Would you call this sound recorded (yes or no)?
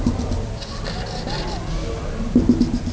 yes